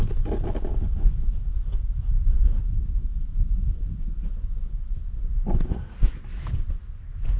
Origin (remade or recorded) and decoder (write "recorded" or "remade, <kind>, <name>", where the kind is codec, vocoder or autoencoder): recorded